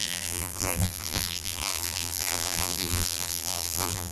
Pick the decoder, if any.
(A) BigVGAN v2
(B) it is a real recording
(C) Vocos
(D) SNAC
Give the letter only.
A